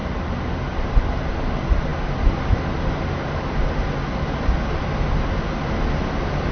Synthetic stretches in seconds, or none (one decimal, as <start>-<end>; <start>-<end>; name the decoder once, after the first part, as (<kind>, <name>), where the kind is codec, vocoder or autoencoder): 0.0-1.4 (vocoder, BigVGAN v2)